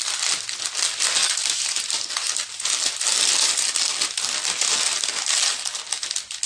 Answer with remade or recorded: recorded